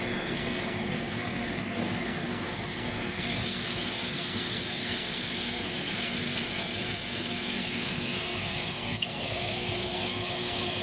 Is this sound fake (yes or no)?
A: yes